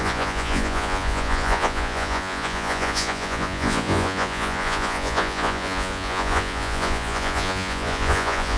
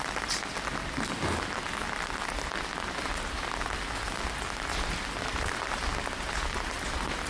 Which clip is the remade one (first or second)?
first